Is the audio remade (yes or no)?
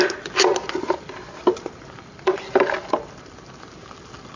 no